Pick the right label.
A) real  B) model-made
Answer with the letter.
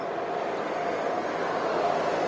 A